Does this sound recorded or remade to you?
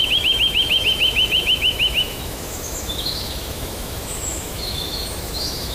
remade